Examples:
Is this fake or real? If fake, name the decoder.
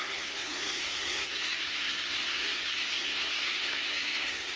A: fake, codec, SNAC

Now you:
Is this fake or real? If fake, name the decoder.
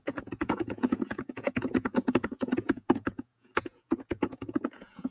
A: fake, vocoder, Vocos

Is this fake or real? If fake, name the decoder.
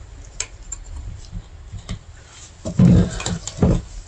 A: real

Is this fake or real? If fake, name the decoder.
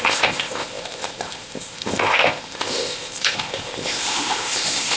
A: fake, codec, ZipCodec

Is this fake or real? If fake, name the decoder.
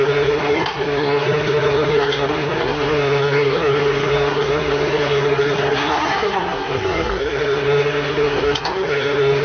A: fake, codec, SNAC